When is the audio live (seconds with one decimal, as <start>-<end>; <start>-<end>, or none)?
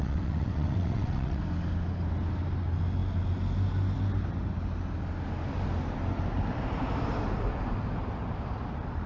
1.4-9.1